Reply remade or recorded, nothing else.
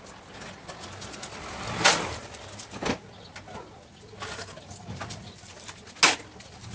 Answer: recorded